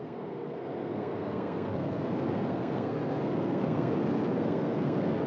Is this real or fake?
fake